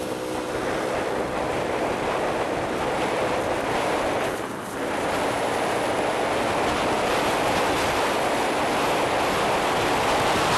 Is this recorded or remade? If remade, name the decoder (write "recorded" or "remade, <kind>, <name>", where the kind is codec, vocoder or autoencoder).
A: recorded